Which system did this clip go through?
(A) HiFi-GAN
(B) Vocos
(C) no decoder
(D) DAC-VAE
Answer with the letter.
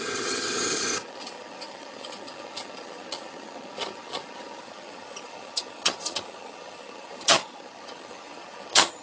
A